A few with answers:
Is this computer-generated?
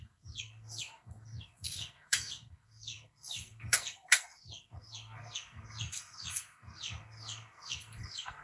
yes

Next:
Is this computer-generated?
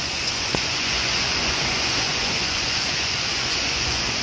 yes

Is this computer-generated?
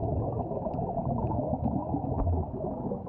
yes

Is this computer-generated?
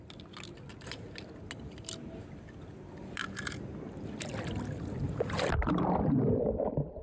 no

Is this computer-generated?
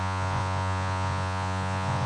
yes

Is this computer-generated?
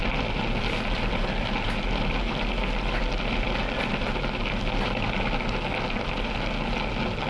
no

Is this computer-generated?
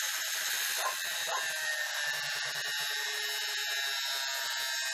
no